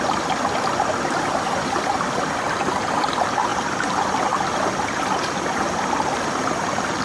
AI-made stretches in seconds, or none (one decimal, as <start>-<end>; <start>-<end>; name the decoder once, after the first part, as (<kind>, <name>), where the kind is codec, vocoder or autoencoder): none